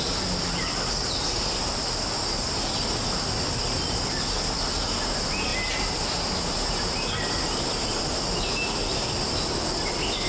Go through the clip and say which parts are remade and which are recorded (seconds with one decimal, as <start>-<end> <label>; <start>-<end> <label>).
0.0-10.3 recorded